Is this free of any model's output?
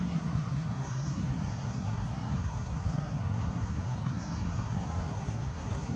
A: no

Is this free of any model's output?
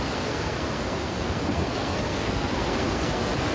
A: no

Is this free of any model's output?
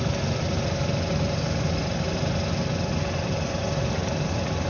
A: yes